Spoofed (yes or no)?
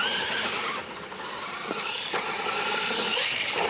no